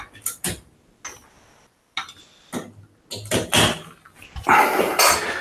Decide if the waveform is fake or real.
real